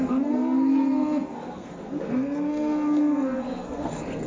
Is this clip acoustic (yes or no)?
no